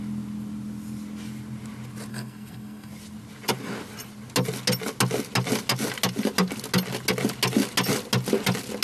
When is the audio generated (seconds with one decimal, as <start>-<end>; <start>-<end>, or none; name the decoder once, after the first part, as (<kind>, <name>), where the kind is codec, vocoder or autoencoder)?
2.1-2.9 (codec, SNAC)